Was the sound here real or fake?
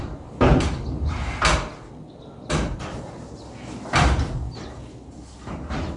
real